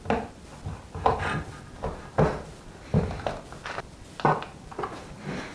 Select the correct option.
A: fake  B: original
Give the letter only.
B